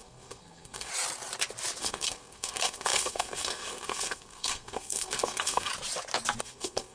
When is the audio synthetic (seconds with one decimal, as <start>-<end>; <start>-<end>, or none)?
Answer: 0.0-0.9; 1.8-5.7; 6.4-6.9